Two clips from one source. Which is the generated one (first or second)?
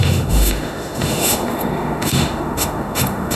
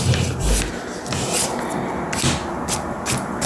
first